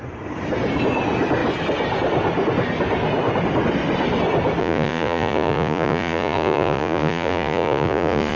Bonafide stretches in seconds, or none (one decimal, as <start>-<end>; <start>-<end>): 0.0-4.6